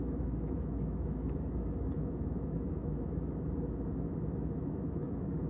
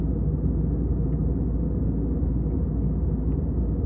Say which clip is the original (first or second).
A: second